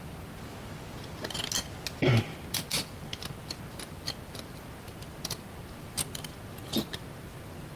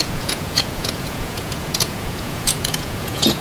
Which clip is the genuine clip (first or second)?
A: first